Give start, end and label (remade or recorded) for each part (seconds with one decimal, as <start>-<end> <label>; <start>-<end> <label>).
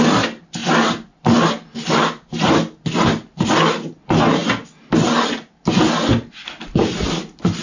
0.0-7.6 recorded